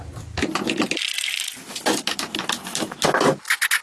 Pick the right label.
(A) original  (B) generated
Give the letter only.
A